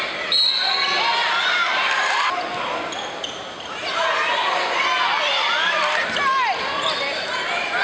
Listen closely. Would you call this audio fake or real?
real